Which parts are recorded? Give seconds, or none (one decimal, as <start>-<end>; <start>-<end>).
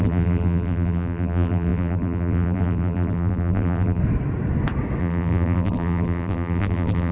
4.0-5.0